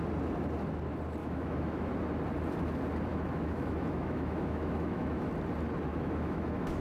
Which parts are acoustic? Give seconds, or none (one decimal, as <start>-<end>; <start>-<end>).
0.0-1.2; 1.9-3.1; 5.3-5.9